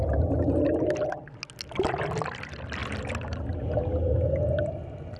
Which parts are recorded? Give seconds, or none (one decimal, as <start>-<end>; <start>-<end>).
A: 0.0-5.2